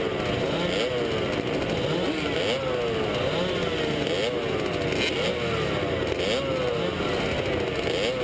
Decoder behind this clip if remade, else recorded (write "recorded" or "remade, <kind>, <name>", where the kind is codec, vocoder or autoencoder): recorded